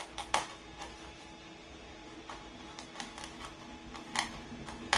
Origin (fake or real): real